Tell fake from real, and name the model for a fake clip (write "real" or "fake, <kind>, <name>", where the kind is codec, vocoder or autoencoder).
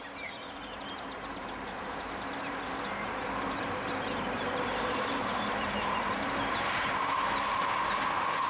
fake, vocoder, BigVGAN v2